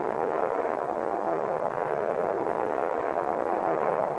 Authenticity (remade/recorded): remade